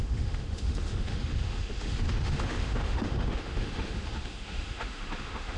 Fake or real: fake